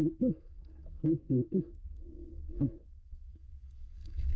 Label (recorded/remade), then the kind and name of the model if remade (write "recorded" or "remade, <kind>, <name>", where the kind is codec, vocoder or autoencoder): remade, codec, SNAC